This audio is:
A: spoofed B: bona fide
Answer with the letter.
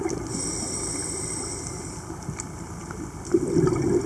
B